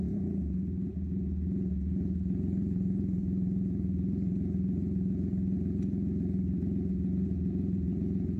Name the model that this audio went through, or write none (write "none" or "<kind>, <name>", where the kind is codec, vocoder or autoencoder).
vocoder, Vocos